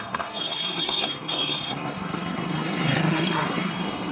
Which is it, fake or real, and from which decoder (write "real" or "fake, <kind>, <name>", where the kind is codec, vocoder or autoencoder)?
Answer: fake, codec, SNAC